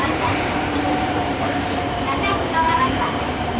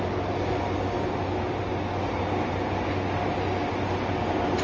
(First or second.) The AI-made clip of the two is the first